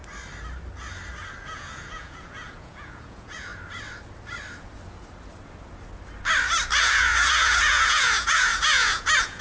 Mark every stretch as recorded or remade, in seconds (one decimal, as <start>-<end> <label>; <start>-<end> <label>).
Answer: 0.0-1.4 recorded; 1.4-3.5 remade; 3.5-6.8 recorded; 6.8-9.4 remade